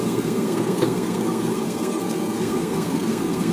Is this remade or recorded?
remade